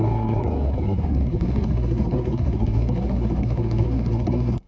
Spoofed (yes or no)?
yes